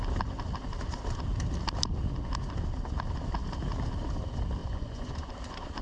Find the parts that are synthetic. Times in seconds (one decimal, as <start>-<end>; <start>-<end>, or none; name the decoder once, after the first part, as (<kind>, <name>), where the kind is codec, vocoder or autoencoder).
4.6-5.3 (vocoder, Vocos)